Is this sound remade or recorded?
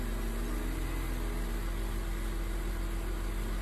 recorded